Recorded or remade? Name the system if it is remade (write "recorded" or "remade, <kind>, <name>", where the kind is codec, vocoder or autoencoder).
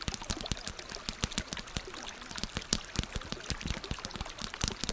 recorded